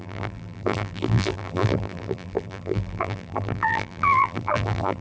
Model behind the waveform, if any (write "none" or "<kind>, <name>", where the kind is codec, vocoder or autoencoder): vocoder, BigVGAN v2